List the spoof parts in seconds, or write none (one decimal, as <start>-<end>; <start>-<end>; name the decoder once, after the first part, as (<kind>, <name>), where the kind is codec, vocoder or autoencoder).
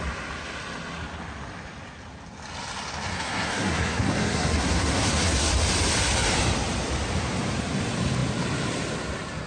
3.1-5.5 (codec, SNAC)